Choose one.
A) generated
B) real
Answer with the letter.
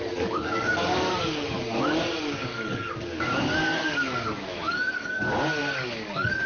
A